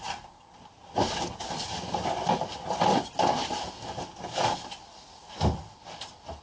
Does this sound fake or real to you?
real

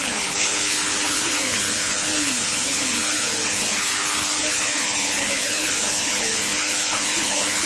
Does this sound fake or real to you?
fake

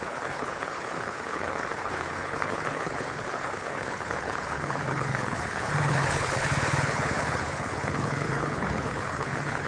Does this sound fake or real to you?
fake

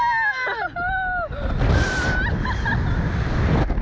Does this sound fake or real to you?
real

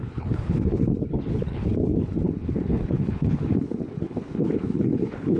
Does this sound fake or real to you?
fake